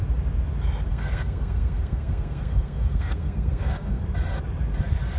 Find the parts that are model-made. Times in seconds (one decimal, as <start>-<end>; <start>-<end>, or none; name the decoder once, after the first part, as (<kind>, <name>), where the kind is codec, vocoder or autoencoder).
0.9-4.0 (codec, SNAC)

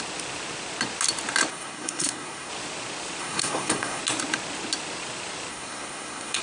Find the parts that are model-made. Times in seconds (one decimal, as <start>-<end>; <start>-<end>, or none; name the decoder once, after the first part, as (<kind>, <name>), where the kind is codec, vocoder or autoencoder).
1.5-2.5 (codec, SNAC); 3.2-4.0; 5.5-6.4

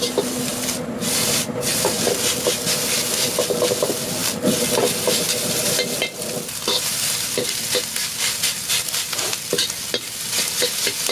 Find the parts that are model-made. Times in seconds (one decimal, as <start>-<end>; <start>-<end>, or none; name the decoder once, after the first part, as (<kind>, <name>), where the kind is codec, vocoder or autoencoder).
none

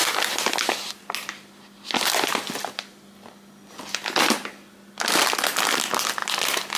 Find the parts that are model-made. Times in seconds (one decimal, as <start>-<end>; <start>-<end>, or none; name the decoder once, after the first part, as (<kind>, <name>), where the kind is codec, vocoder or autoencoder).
none

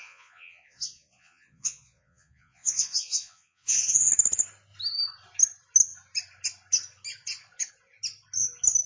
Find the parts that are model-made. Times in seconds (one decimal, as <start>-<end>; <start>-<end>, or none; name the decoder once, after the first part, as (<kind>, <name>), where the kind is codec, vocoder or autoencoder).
0.0-4.1 (vocoder, Vocos)

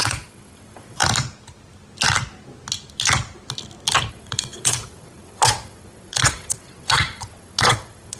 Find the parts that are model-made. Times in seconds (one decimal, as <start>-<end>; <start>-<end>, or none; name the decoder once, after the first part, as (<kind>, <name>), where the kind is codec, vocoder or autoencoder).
0.0-1.0 (vocoder, WaveNeXt); 4.1-8.2

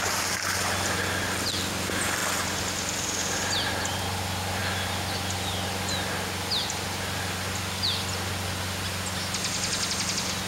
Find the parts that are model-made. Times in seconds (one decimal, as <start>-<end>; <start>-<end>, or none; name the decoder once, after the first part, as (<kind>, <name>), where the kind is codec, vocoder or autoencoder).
none

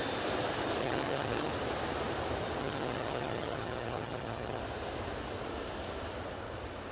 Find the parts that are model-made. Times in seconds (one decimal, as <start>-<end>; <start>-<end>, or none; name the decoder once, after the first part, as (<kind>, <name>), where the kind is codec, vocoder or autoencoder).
0.8-1.5 (vocoder, HiFi-GAN); 2.6-4.6